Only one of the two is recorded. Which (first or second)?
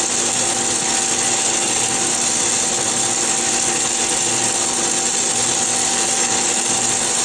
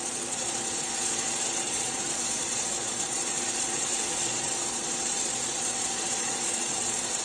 first